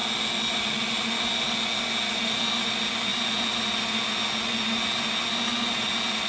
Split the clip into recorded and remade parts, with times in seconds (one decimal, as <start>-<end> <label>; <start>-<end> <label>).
0.0-6.3 recorded